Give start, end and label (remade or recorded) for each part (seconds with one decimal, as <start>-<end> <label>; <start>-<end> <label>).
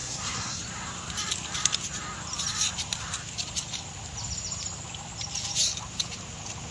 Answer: 0.0-0.6 remade; 0.6-6.7 recorded